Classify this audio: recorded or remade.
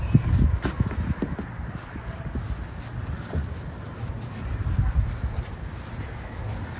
recorded